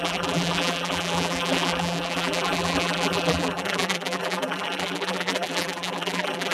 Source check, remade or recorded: remade